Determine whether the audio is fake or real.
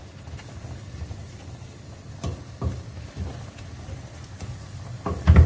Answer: fake